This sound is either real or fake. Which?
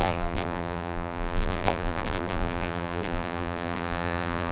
fake